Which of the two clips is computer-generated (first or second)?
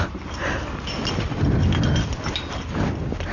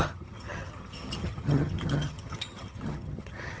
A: second